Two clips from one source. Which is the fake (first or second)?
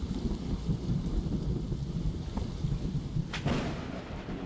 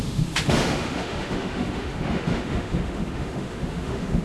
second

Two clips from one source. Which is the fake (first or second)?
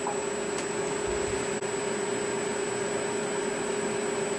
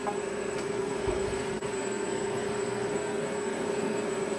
second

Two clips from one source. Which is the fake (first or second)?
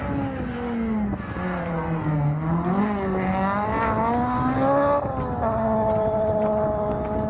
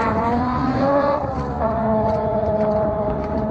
second